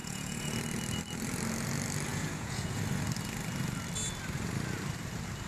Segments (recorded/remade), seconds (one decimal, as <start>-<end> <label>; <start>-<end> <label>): 0.0-0.5 remade; 0.5-2.1 recorded; 2.1-2.8 remade; 2.8-5.5 recorded